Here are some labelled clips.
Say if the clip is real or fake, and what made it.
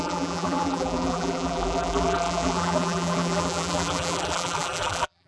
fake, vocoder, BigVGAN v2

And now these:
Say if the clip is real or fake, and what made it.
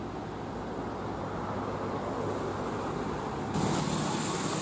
real